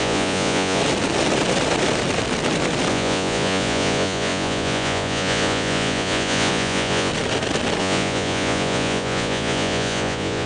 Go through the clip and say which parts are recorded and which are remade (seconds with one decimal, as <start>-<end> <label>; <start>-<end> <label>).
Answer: 0.0-0.8 remade; 0.8-2.9 recorded; 2.9-7.1 remade; 7.1-7.8 recorded; 7.8-10.5 remade